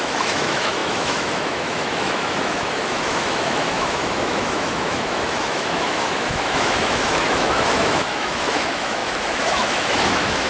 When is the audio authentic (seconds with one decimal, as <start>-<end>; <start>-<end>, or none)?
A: none